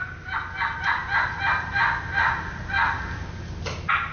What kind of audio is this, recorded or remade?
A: recorded